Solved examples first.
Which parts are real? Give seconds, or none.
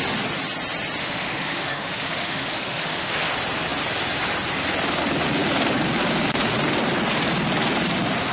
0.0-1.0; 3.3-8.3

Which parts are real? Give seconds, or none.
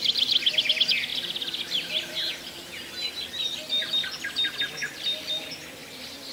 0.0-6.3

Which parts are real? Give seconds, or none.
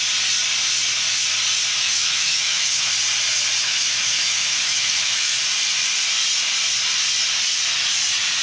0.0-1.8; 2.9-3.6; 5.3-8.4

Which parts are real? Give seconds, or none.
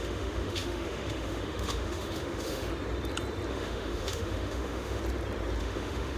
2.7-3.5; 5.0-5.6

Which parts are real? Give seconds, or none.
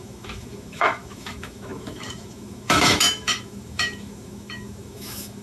none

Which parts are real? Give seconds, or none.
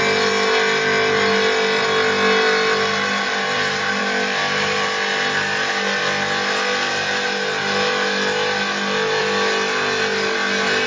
0.0-10.9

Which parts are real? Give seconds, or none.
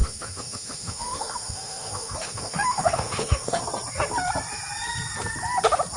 3.6-6.0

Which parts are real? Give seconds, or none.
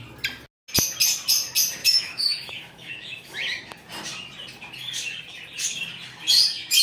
0.0-1.8; 3.6-6.8